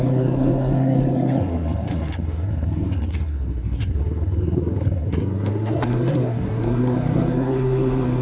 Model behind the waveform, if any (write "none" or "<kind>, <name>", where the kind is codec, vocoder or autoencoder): codec, SNAC